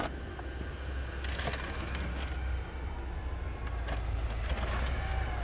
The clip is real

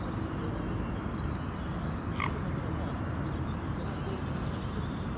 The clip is real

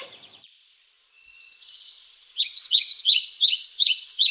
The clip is fake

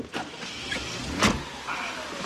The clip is real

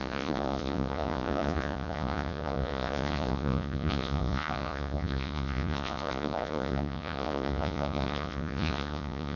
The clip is fake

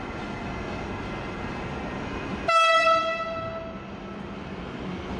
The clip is real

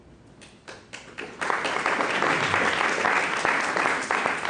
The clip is real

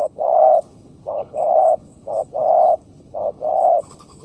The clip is fake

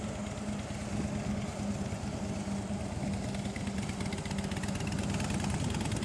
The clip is real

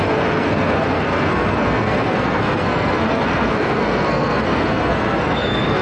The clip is fake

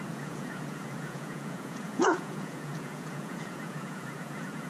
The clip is fake